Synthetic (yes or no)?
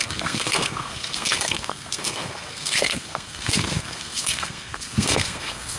yes